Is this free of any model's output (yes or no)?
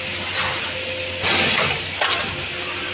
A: yes